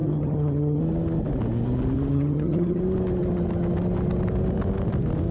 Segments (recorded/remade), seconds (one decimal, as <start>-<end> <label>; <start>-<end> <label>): 0.0-0.8 remade; 0.8-2.1 recorded; 2.1-2.8 remade; 2.8-5.3 recorded

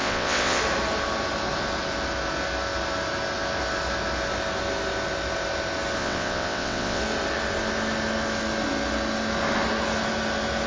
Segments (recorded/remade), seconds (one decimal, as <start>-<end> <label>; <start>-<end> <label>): 0.0-0.6 remade; 0.6-6.0 recorded; 6.0-7.0 remade; 7.0-10.7 recorded

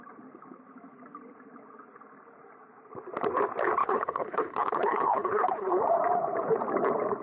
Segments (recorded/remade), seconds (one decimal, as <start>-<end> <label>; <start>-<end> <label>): 0.0-3.8 recorded; 3.8-5.8 remade; 5.8-7.2 recorded

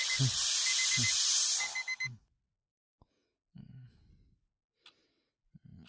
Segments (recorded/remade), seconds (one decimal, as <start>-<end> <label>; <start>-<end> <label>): 0.0-1.7 recorded; 1.7-4.1 remade; 4.1-5.9 recorded

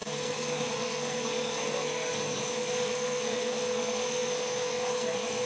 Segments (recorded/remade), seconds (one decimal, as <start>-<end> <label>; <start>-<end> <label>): 0.0-5.5 remade

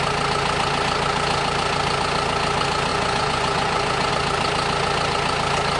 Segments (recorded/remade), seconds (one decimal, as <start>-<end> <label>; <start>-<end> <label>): 0.0-2.9 recorded; 2.9-4.1 remade; 4.1-5.8 recorded

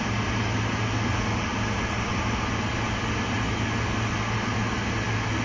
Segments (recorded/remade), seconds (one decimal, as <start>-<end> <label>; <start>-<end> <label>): 0.0-5.4 recorded